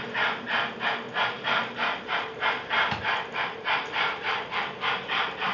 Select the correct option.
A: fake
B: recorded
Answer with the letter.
A